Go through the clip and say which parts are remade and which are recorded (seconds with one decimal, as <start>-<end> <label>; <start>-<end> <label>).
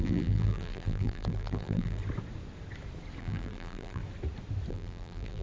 0.0-2.0 remade; 2.0-3.2 recorded; 3.2-4.0 remade; 4.0-4.7 recorded; 4.7-5.4 remade